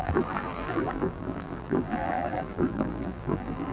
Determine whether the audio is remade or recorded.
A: remade